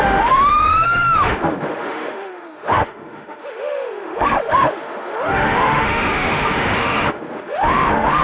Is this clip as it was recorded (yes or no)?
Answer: no